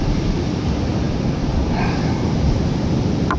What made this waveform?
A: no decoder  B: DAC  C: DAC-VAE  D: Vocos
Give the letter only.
A